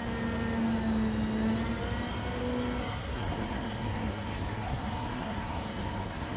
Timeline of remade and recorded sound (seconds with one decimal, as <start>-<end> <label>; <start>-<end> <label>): 0.0-2.8 recorded; 2.8-6.4 remade